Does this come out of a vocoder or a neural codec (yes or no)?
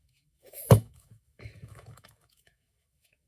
yes